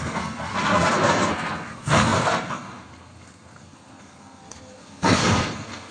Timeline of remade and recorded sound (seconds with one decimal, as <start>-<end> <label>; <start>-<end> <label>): 0.0-5.9 remade